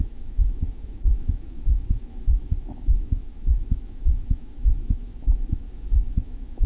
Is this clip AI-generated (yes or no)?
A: yes